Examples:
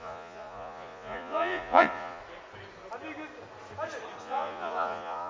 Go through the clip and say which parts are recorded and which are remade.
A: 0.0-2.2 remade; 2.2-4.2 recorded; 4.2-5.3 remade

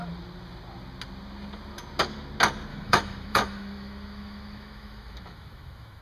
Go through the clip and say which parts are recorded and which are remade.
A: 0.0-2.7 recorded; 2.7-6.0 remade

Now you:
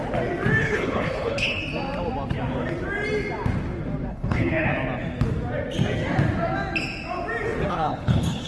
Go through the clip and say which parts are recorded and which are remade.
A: 0.0-0.6 recorded; 0.6-1.6 remade; 1.6-4.1 recorded; 4.1-4.7 remade; 4.7-7.7 recorded; 7.7-8.5 remade